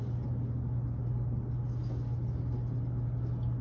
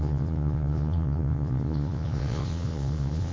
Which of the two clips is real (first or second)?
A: first